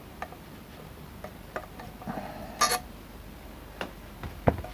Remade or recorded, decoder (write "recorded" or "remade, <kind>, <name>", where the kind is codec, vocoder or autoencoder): recorded